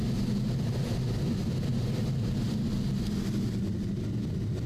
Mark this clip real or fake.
real